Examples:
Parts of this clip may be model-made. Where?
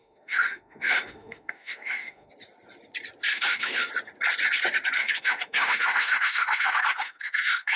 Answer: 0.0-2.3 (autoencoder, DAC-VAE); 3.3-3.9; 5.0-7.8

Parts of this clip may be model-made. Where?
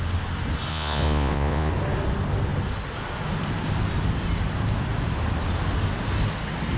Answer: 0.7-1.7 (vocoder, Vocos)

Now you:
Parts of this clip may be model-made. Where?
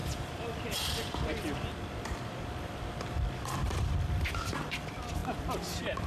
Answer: 0.0-5.2 (vocoder, BigVGAN v2)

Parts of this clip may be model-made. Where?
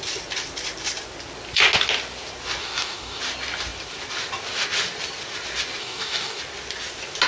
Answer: 2.6-3.2 (codec, DAC); 5.8-6.4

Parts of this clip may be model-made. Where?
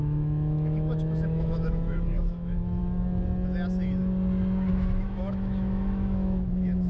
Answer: 0.0-2.8 (autoencoder, DAC-VAE); 4.7-6.9